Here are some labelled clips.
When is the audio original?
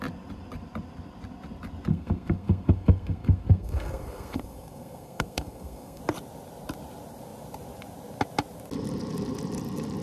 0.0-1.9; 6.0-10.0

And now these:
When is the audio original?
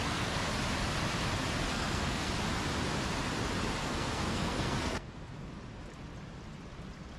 0.5-1.7; 2.3-3.8; 5.5-7.2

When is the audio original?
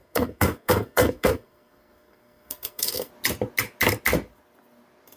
3.1-5.2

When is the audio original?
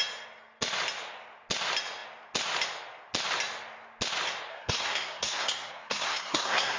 0.0-4.5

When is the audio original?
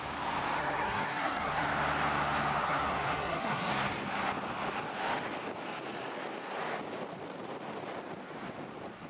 0.0-0.6; 1.6-2.6; 3.7-9.1